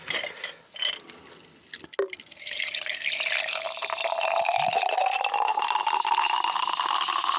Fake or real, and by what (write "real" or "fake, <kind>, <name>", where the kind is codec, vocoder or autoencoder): real